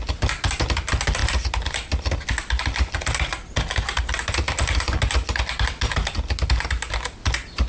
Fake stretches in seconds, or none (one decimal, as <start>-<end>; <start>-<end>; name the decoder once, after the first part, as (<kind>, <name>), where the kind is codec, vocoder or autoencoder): none